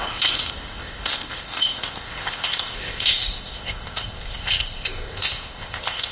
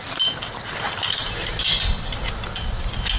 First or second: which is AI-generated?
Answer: first